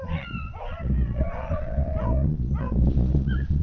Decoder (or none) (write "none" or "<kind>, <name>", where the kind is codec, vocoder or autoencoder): vocoder, Vocos